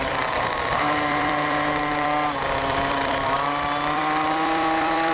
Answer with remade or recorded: remade